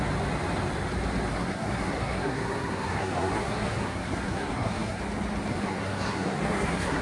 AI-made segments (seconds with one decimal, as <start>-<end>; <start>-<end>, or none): 1.3-5.0; 5.5-7.0